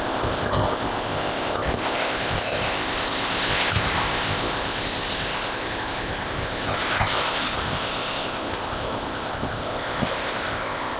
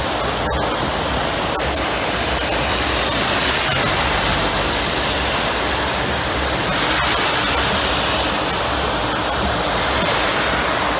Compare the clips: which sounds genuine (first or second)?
second